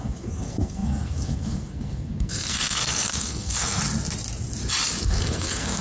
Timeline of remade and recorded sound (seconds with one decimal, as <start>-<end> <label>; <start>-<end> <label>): 0.0-3.8 remade; 3.8-5.1 recorded; 5.1-5.8 remade